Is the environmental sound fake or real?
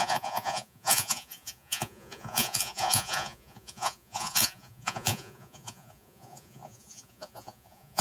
fake